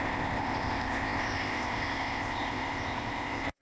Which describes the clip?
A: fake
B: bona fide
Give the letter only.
A